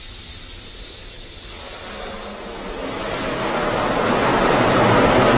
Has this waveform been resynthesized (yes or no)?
no